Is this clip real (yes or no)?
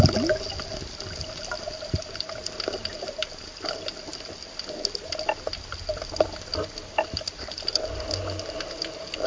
yes